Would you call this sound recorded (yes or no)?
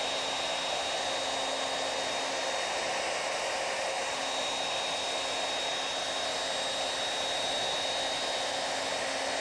yes